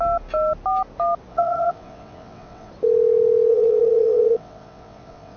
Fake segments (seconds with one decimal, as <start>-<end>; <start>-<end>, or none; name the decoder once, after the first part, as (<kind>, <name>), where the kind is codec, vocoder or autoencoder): 1.3-2.7 (vocoder, WaveNeXt); 3.5-5.4